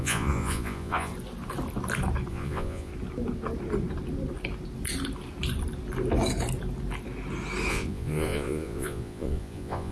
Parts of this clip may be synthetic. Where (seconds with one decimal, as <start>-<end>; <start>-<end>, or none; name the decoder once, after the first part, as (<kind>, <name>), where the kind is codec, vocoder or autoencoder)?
0.0-1.1 (vocoder, Vocos); 2.3-2.9; 7.7-9.9